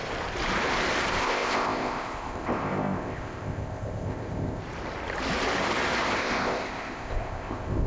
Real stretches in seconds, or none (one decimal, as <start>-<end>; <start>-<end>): 0.0-1.2; 4.6-6.2